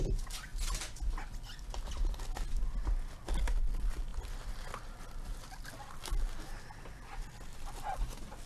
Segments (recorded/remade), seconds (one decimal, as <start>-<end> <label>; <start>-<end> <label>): 0.0-8.5 recorded